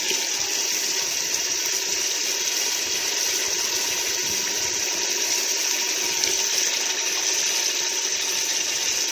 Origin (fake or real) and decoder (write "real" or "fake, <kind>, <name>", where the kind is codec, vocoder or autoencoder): real